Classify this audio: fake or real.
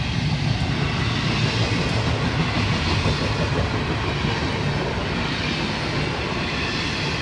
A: real